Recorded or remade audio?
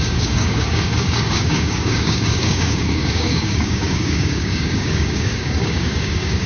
remade